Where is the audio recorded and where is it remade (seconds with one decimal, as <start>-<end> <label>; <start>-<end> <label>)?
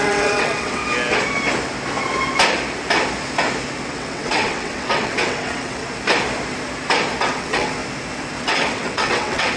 0.0-0.8 remade; 0.8-3.9 recorded; 3.9-5.8 remade; 5.8-7.2 recorded; 7.2-7.8 remade; 7.8-8.4 recorded; 8.4-9.6 remade